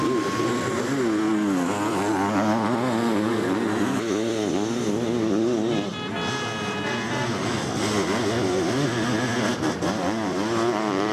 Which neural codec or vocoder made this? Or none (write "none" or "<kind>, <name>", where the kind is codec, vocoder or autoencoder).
none